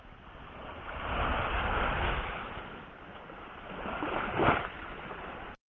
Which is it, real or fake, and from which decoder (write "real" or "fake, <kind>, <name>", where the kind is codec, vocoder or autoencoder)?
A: real